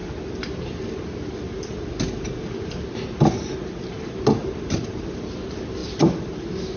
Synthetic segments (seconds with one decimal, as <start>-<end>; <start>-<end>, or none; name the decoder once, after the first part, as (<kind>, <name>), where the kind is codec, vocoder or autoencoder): none